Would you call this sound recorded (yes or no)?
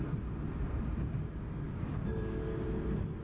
yes